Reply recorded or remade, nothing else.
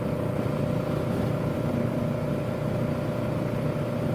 recorded